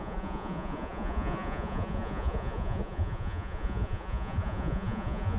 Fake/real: fake